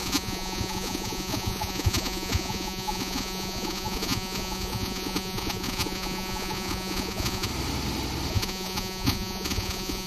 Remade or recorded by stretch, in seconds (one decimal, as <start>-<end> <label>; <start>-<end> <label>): 0.0-7.5 remade; 7.5-8.3 recorded; 8.3-10.1 remade